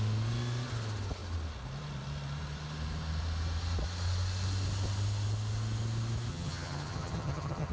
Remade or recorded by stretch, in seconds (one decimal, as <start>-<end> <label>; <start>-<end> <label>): 0.0-6.3 recorded; 6.3-7.7 remade